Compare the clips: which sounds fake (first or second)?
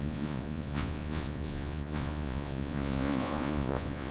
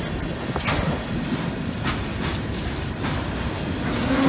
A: first